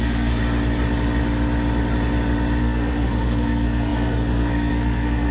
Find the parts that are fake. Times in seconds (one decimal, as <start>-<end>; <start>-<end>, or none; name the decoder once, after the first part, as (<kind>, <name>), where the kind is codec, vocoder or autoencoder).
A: 0.0-0.4 (codec, SNAC); 2.6-5.3